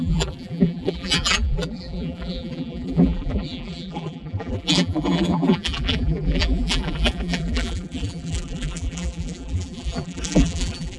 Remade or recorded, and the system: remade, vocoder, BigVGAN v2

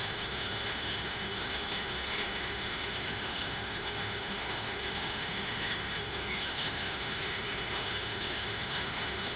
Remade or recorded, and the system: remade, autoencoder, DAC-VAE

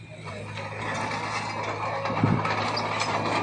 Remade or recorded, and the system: recorded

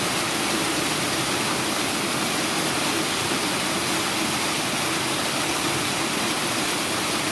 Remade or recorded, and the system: recorded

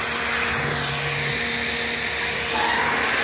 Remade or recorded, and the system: recorded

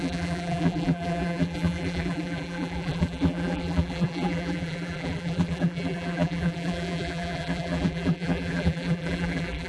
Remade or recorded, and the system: remade, vocoder, BigVGAN v2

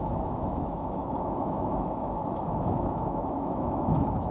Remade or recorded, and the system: remade, autoencoder, DAC-VAE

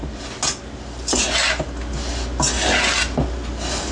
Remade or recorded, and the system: recorded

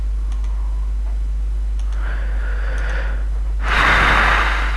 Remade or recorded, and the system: recorded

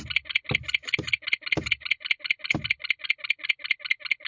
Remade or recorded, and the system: recorded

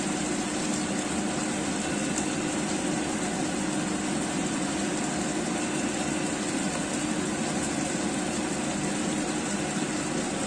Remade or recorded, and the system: recorded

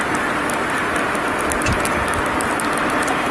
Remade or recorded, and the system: recorded